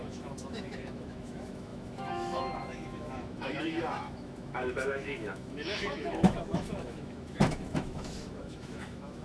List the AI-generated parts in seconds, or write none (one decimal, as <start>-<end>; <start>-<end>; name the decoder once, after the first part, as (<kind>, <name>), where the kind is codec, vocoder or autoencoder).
0.0-9.2 (autoencoder, DAC-VAE)

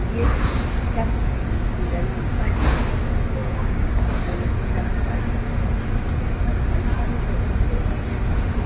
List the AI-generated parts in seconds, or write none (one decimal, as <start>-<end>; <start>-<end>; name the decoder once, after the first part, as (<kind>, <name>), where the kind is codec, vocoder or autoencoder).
1.2-4.9 (codec, DAC)

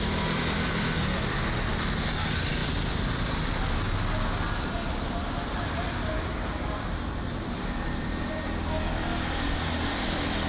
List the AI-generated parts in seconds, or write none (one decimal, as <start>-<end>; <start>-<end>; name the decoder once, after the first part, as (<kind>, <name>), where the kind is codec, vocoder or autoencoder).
none

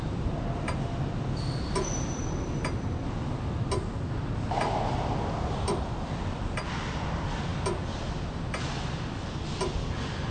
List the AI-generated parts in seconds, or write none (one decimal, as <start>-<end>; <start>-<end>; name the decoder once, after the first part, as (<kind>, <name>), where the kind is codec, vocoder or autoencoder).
none

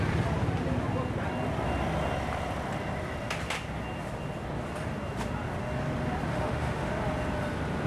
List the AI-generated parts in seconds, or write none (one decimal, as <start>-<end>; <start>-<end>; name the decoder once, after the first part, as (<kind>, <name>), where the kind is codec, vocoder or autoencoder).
6.3-6.9 (autoencoder, DAC-VAE)